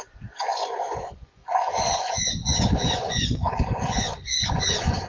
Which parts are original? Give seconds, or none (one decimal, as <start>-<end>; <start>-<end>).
none